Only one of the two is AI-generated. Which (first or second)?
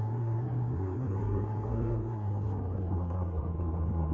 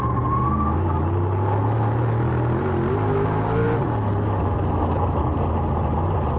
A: first